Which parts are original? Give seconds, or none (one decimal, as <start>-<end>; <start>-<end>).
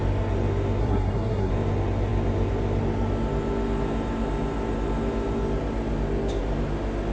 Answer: 0.0-0.8; 1.5-7.1